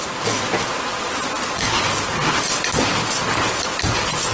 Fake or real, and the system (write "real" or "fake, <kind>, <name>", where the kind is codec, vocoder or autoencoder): real